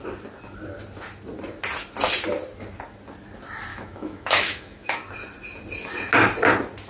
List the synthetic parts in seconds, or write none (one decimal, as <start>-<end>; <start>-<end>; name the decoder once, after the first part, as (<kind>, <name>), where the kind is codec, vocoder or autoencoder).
3.7-5.1 (autoencoder, DAC-VAE)